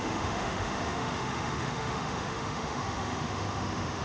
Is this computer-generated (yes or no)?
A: yes